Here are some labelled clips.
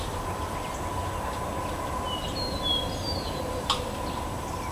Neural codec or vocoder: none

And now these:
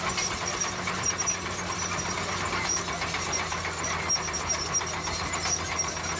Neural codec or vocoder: none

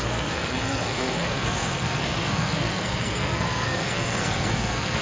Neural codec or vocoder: codec, SNAC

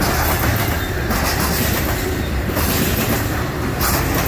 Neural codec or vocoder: none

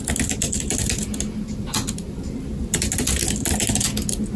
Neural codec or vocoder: none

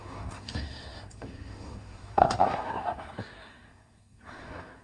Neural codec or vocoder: codec, SNAC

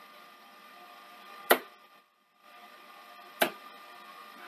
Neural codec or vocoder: none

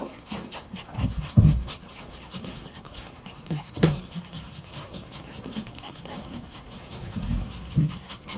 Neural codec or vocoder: codec, SNAC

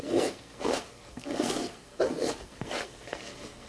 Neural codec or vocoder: codec, SNAC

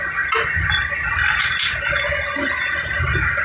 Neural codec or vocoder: none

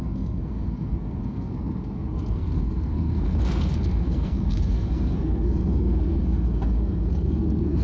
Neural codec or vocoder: codec, SNAC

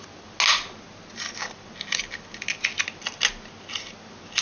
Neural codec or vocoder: none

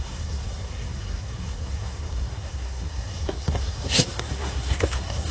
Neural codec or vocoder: codec, SNAC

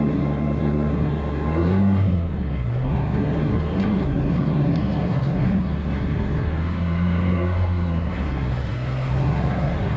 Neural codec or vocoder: codec, SNAC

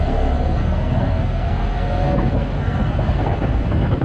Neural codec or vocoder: codec, SNAC